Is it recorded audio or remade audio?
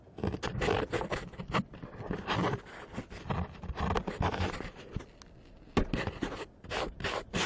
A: recorded